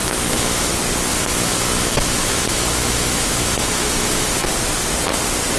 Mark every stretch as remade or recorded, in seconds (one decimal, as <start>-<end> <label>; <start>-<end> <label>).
0.0-0.7 remade; 0.7-1.1 recorded; 1.1-4.5 remade; 4.5-5.6 recorded